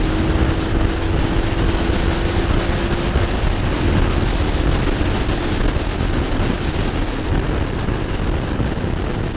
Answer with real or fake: real